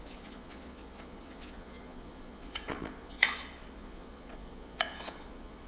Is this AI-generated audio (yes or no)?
yes